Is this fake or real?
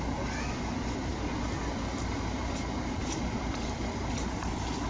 real